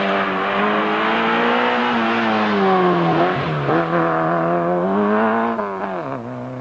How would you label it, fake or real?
real